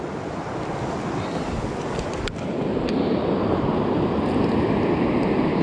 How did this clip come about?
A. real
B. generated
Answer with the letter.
A